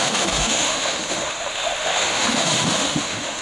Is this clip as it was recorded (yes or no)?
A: no